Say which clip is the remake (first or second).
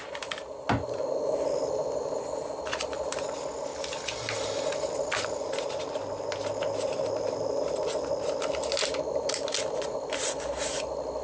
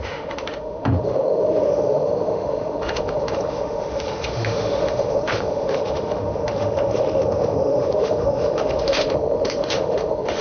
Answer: second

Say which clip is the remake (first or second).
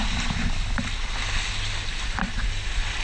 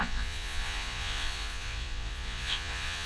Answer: second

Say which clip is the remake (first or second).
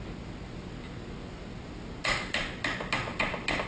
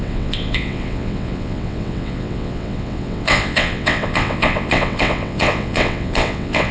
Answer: second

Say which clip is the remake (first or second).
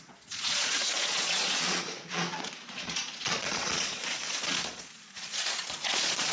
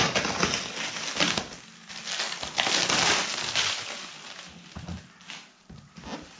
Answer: first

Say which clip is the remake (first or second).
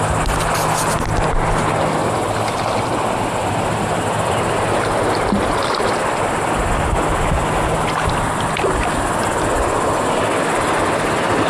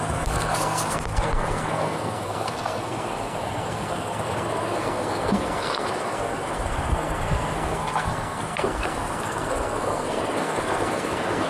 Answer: second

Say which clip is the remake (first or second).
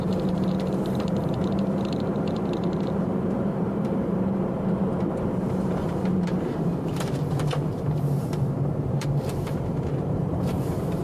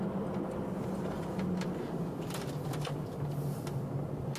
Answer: first